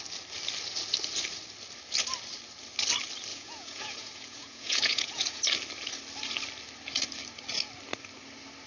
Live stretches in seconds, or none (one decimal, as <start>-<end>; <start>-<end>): 0.0-3.3; 5.4-8.7